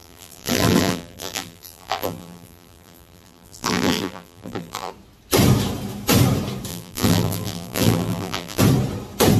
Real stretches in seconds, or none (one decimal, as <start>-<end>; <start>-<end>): 4.9-6.7; 8.6-9.4